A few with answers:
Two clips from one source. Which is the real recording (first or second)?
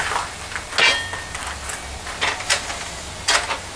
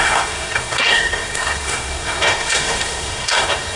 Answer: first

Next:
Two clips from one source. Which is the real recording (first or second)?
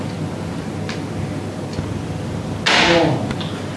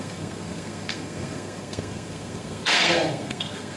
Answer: first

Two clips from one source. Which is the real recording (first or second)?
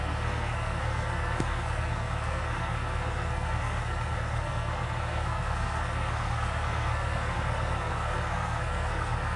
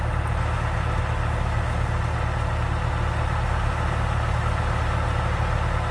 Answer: second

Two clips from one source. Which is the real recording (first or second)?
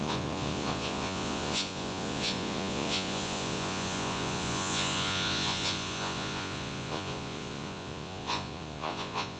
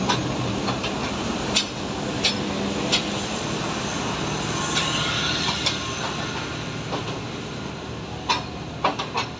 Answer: second